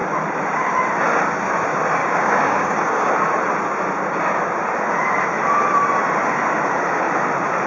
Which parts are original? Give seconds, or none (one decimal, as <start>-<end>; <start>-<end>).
0.0-2.0; 3.1-7.7